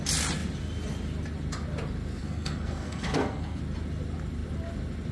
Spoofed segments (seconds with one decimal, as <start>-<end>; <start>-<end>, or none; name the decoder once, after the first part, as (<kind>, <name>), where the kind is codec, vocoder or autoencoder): 2.2-3.6 (codec, SNAC)